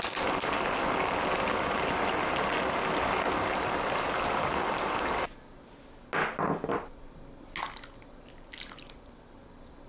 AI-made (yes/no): no